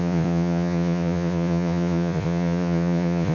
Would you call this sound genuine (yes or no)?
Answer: no